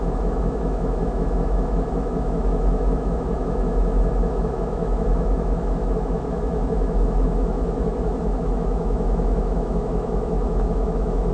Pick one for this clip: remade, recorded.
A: remade